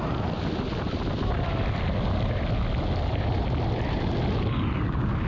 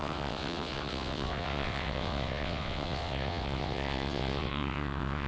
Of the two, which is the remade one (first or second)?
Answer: second